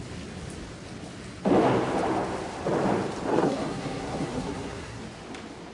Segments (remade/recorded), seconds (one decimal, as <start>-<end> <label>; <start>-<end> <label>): 0.0-3.3 recorded; 3.3-5.0 remade; 5.0-5.7 recorded